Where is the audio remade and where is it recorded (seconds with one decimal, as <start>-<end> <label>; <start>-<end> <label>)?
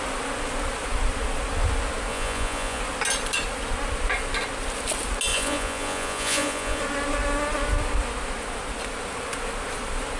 0.0-2.1 recorded; 2.1-2.8 remade; 2.8-5.3 recorded; 5.3-6.8 remade; 6.8-10.2 recorded